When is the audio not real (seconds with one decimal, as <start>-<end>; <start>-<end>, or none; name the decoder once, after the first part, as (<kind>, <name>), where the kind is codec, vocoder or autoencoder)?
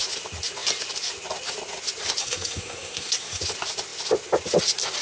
2.2-3.4 (codec, SNAC)